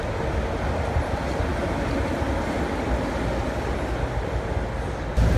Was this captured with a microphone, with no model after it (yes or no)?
yes